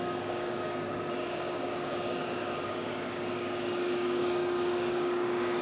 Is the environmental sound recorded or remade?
remade